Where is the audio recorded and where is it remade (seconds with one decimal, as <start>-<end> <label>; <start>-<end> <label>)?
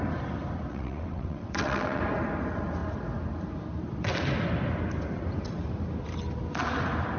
0.0-0.7 recorded; 0.7-2.0 remade; 2.0-7.2 recorded